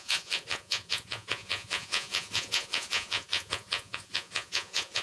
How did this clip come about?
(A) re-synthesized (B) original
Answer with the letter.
A